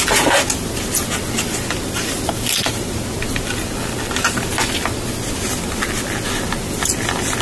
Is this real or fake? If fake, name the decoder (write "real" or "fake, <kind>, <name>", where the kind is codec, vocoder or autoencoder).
real